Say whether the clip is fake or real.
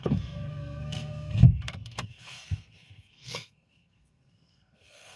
fake